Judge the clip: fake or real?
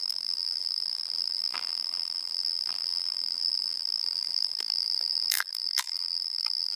fake